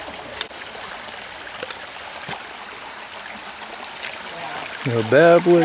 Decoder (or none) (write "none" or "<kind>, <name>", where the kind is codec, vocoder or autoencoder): none